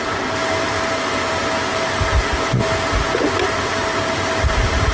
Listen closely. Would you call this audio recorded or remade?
remade